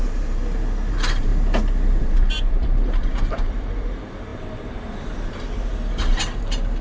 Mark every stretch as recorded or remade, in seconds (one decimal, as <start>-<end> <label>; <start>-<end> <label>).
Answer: 0.0-0.4 remade; 0.4-0.9 recorded; 0.9-1.3 remade; 1.3-2.0 recorded; 2.0-6.8 remade